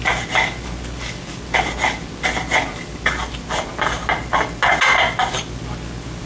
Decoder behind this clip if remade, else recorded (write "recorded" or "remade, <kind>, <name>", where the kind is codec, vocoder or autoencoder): recorded